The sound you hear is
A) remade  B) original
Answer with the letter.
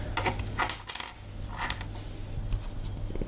B